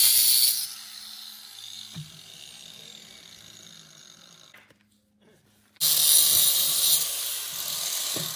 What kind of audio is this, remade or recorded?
recorded